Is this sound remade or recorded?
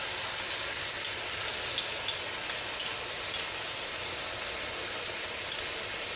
recorded